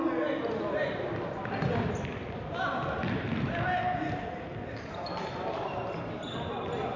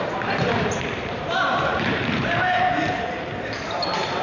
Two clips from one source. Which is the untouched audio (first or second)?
first